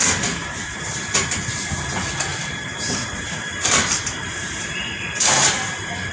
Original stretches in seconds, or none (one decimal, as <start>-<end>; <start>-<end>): 0.0-0.4; 1.3-2.3